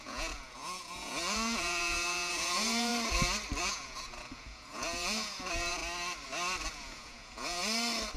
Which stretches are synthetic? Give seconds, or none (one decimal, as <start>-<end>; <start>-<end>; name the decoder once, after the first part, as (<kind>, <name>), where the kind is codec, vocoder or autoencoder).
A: 0.0-2.9 (vocoder, Vocos); 3.6-5.8; 6.7-7.6